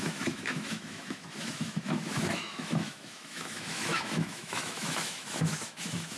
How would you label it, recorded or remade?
remade